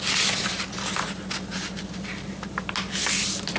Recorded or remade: recorded